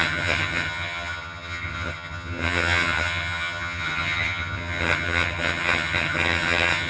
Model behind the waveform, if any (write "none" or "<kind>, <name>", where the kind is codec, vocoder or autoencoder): vocoder, HiFi-GAN